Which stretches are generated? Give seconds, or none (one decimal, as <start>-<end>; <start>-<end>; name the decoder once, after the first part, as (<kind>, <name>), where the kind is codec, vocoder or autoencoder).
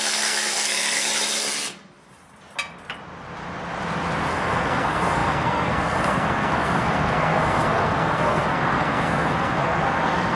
0.0-1.1 (codec, SNAC); 4.3-10.4